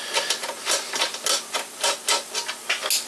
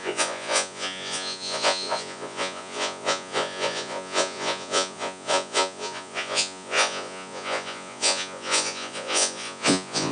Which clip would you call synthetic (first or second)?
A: second